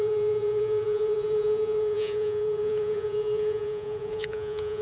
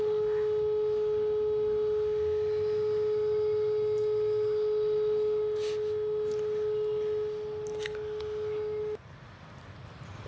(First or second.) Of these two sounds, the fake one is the first